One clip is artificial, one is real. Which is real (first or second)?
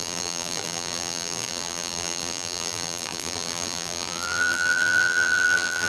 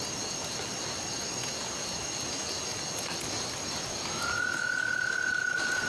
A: second